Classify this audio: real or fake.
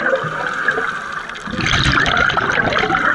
real